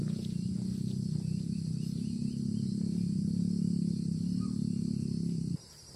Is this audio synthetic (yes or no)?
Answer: no